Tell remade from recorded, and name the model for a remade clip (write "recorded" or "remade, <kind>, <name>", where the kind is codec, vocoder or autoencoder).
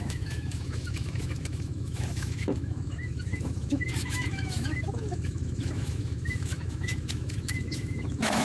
remade, autoencoder, DAC-VAE